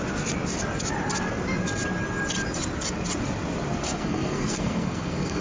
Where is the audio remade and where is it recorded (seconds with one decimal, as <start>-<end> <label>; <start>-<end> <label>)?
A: 0.0-3.8 recorded; 3.8-5.4 remade